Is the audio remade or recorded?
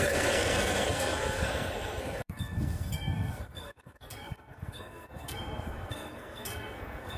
remade